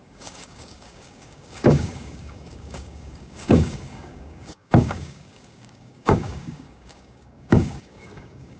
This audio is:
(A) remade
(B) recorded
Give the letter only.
A